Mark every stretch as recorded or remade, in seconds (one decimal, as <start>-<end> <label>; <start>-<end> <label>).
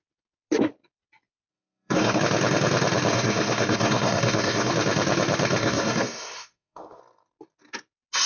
0.0-1.5 recorded; 1.5-2.2 remade; 2.2-3.1 recorded; 3.1-4.7 remade; 4.7-5.6 recorded; 5.6-7.0 remade; 7.0-8.3 recorded